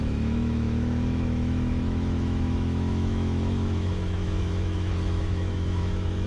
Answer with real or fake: fake